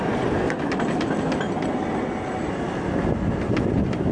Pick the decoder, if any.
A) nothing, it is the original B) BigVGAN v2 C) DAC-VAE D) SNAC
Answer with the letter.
A